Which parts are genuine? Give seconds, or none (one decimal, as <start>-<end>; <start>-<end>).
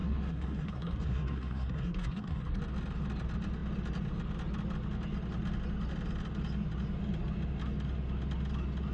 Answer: 2.6-8.9